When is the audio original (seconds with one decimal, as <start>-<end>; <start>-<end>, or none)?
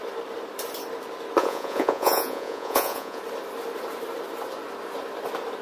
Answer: 0.0-1.4; 3.2-5.6